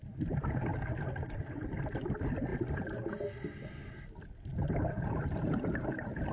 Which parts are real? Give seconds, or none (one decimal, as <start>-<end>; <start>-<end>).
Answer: 0.0-6.3